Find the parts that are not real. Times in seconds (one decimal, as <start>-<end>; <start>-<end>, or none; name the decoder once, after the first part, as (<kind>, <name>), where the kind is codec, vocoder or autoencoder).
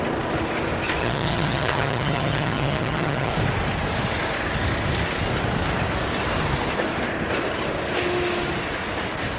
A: 1.0-3.3 (vocoder, HiFi-GAN)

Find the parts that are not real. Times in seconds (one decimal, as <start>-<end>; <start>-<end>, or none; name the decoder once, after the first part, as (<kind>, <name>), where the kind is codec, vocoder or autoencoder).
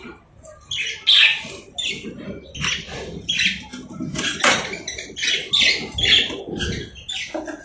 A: none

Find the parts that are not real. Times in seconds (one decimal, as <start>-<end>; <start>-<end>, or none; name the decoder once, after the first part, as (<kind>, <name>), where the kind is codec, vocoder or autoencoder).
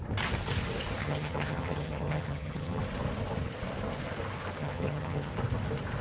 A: 1.0-2.8 (vocoder, HiFi-GAN); 4.6-5.3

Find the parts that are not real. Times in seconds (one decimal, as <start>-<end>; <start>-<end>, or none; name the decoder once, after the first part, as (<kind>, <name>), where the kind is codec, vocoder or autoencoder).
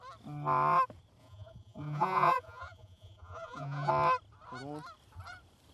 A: 1.2-3.9 (vocoder, Vocos)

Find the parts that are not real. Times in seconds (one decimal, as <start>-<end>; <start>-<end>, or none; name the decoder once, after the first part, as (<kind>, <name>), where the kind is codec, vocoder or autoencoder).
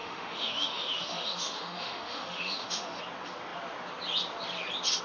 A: 0.0-3.0 (autoencoder, DAC-VAE)